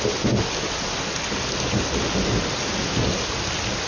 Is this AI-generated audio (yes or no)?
no